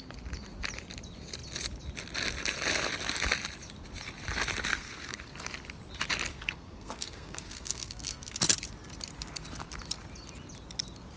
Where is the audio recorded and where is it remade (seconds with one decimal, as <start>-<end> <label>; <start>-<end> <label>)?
0.0-4.7 recorded; 4.7-5.3 remade; 5.3-6.3 recorded; 6.3-8.4 remade; 8.4-11.2 recorded